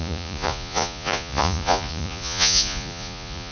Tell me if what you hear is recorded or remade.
remade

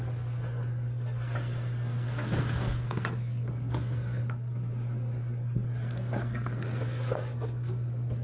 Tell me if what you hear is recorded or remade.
remade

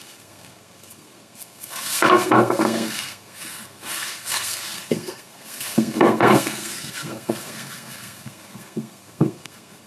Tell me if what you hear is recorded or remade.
remade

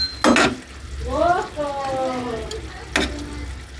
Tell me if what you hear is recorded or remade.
recorded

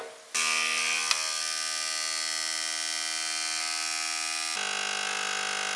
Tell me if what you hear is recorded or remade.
recorded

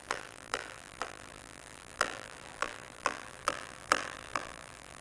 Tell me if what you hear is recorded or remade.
remade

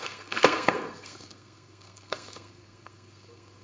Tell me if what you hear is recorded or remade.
remade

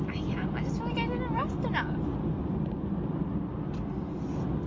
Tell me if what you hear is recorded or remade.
recorded